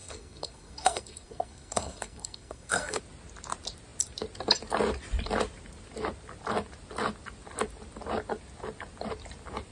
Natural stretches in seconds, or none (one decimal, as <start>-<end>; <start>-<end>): 3.0-9.7